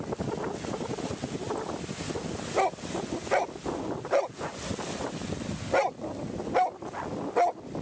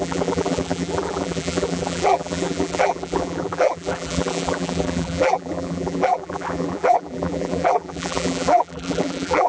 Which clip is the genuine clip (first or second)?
first